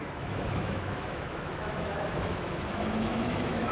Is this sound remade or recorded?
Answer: remade